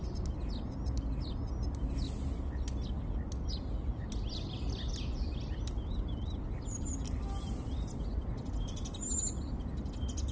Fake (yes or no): no